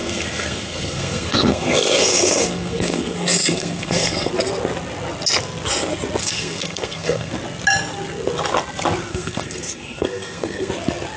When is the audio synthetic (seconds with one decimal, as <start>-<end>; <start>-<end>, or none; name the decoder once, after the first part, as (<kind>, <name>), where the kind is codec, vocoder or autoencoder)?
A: 0.0-4.3 (codec, SNAC); 6.2-7.3; 9.1-10.7